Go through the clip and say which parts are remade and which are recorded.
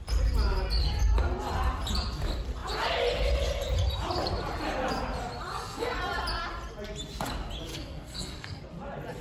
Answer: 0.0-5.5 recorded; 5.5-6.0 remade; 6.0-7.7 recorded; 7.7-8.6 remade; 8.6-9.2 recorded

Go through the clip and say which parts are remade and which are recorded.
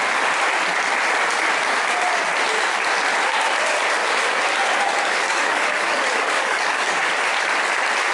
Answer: 0.0-4.0 recorded; 4.0-7.1 remade; 7.1-8.1 recorded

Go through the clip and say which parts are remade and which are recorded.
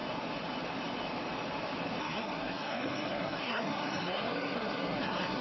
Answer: 0.0-2.0 recorded; 2.0-5.4 remade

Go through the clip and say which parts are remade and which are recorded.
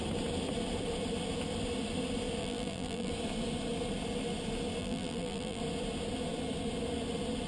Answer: 0.0-2.4 recorded; 2.4-3.1 remade; 3.1-4.8 recorded; 4.8-5.6 remade; 5.6-7.5 recorded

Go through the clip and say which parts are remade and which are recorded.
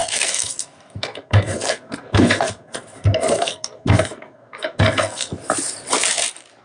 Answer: 0.0-5.3 remade; 5.3-6.6 recorded